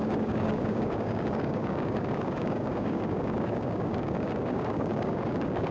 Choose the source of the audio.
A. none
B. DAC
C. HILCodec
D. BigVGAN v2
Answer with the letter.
B